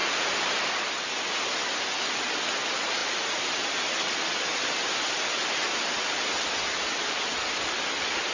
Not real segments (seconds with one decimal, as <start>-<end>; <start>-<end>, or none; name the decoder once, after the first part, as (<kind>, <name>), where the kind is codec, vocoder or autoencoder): 0.0-1.4 (vocoder, BigVGAN v2); 3.0-3.6